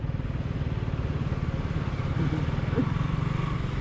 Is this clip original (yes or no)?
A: yes